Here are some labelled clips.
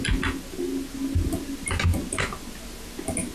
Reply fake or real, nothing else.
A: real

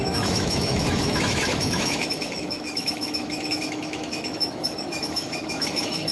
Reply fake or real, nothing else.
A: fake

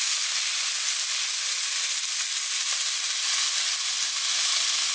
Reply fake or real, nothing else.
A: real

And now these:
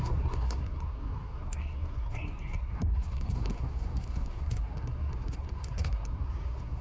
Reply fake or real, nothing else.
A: fake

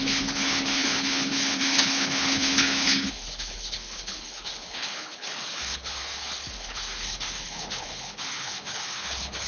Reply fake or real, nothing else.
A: fake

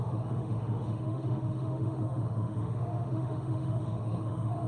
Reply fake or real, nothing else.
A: fake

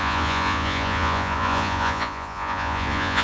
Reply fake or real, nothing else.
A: fake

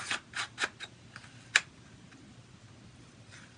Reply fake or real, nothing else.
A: real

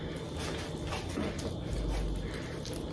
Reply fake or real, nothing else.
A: real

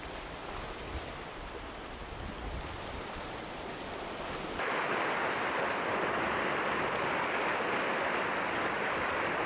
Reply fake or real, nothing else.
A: real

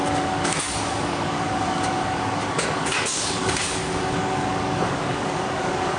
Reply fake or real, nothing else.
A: fake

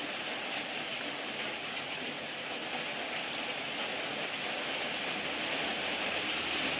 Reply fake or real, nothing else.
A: real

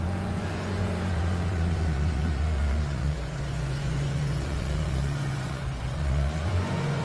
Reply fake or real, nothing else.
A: fake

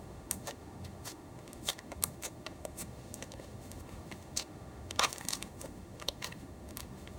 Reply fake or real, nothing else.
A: fake